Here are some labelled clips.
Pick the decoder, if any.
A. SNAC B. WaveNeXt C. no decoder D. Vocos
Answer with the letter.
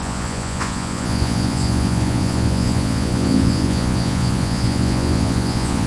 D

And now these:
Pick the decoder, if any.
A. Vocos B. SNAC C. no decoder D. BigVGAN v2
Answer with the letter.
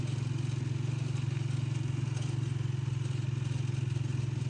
C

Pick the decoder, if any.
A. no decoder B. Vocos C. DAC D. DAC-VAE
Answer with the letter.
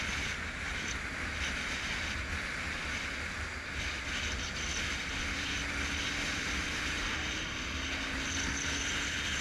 A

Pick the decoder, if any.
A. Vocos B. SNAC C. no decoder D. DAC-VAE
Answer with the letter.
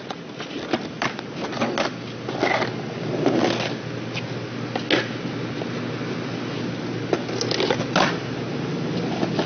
C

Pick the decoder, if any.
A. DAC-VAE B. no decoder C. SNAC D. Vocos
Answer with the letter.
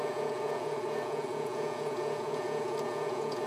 D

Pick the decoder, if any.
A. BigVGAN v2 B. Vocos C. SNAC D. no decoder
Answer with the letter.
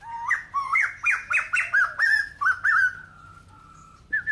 D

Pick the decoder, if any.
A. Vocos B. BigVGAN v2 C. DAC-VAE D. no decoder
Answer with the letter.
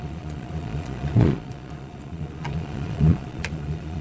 A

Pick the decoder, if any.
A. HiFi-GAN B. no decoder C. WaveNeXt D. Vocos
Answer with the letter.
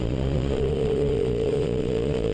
D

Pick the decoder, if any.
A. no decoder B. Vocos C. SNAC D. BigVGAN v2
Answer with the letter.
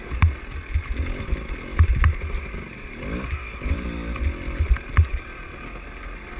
A